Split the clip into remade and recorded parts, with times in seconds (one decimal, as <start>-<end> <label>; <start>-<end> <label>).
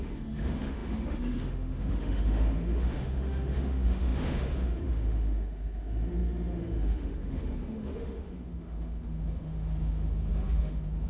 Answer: 0.0-11.1 remade